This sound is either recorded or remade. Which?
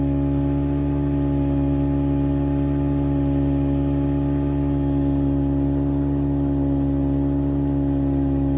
recorded